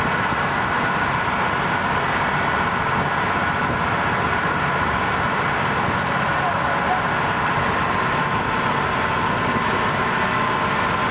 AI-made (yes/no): no